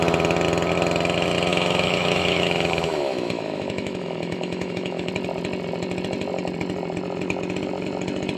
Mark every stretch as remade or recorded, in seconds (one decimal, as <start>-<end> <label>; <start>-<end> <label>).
0.0-1.5 recorded; 1.5-5.1 remade; 5.1-8.4 recorded